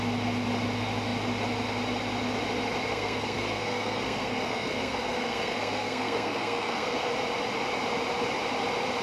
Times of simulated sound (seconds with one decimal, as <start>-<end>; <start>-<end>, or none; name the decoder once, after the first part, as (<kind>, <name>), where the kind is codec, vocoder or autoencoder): 2.9-7.1 (codec, SNAC)